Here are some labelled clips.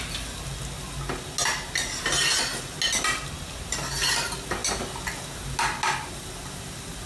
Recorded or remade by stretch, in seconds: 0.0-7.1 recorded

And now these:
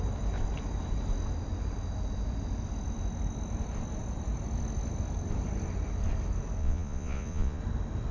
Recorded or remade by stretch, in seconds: 0.0-6.6 recorded; 6.6-7.6 remade; 7.6-8.1 recorded

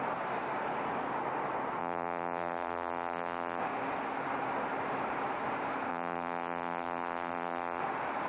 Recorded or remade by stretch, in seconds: 0.0-1.8 recorded; 1.8-3.6 remade; 3.6-5.9 recorded; 5.9-7.8 remade; 7.8-8.3 recorded

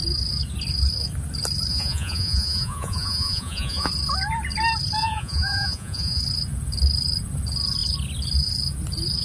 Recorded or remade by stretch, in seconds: 0.0-1.7 recorded; 1.7-3.9 remade; 3.9-5.0 recorded; 5.0-6.2 remade; 6.2-9.2 recorded

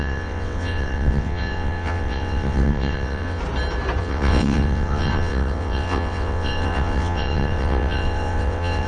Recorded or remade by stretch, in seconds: 0.0-3.4 remade; 3.4-4.0 recorded; 4.0-8.9 remade

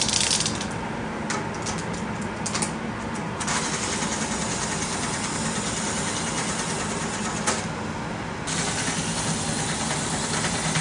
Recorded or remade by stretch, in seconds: 0.0-10.8 recorded

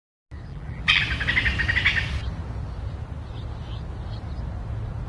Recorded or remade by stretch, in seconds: 0.0-0.5 recorded; 0.5-1.0 remade; 1.0-5.1 recorded

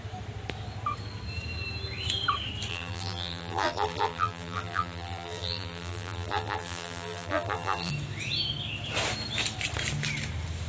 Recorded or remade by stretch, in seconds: 0.0-2.7 recorded; 2.7-7.9 remade; 7.9-10.7 recorded